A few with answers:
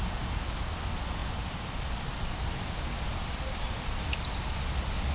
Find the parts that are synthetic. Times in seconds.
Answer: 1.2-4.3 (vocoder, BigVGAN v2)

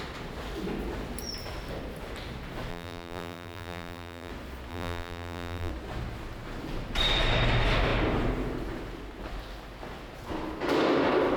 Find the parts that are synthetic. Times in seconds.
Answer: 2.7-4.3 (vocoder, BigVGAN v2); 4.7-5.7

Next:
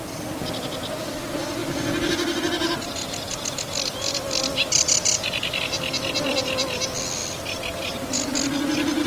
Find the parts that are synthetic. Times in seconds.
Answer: 1.6-2.4 (vocoder, BigVGAN v2); 3.0-5.6